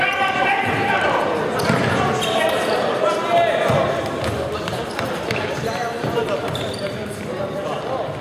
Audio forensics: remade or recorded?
recorded